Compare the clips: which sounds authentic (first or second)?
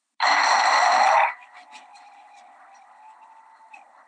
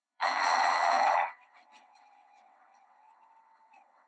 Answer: first